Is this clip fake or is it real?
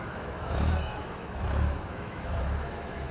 fake